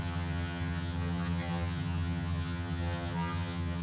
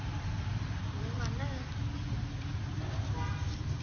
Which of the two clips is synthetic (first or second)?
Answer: first